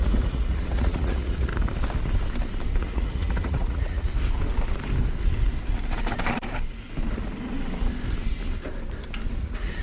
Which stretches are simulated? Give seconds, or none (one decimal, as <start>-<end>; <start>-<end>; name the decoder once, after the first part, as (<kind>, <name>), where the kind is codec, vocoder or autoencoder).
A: 0.0-1.5 (vocoder, Vocos); 2.8-4.1; 9.3-9.8